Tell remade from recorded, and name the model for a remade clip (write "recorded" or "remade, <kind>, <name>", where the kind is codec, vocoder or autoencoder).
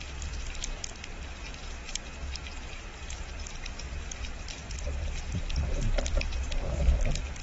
remade, vocoder, BigVGAN v2